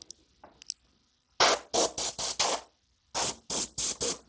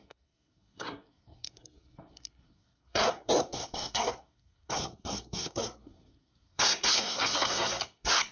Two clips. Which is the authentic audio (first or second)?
first